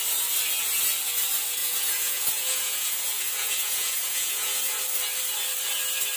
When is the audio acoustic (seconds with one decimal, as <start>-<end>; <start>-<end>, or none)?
0.0-1.6; 4.8-6.2